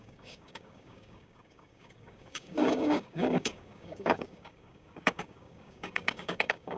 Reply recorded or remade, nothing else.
remade